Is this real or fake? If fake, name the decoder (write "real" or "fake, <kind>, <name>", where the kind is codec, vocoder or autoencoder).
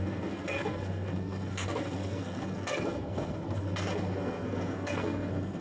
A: fake, codec, SNAC